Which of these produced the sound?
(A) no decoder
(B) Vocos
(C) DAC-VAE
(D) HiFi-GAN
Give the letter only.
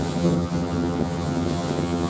D